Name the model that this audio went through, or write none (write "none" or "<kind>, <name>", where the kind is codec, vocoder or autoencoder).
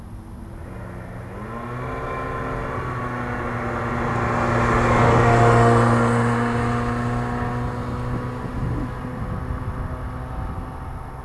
none